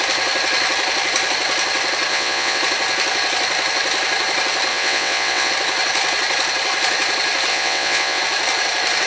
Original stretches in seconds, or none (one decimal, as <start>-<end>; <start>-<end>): 0.0-2.1; 2.6-4.7; 5.5-7.5; 8.2-9.1